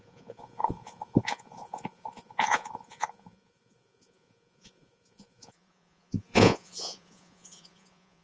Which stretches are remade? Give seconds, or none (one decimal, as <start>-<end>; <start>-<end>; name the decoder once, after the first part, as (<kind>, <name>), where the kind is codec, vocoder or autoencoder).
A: 0.0-8.2 (vocoder, Vocos)